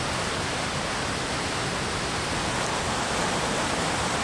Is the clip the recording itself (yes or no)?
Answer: yes